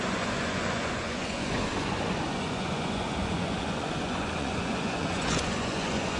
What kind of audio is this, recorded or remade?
remade